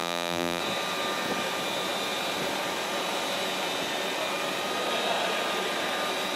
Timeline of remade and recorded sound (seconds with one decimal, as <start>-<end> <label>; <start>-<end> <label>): 0.0-0.6 remade; 0.6-6.4 recorded

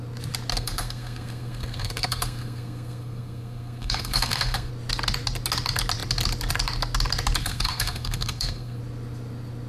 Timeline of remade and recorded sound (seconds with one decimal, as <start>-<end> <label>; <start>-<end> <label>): 0.0-0.5 recorded; 0.5-4.7 remade; 4.7-7.4 recorded; 7.4-8.8 remade; 8.8-9.7 recorded

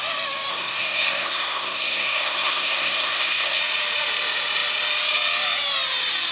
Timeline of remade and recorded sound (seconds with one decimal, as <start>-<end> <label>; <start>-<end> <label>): 0.0-0.5 recorded; 0.5-3.6 remade; 3.6-6.3 recorded